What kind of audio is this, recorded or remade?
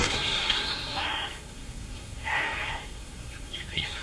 remade